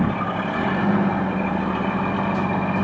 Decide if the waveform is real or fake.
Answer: real